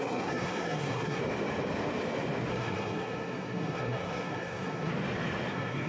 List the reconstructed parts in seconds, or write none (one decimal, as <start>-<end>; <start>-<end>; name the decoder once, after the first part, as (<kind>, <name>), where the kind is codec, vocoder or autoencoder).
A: 0.0-1.2 (codec, SNAC); 2.5-4.9; 5.5-5.9